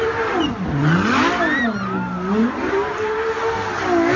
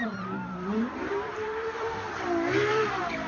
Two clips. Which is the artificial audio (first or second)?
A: second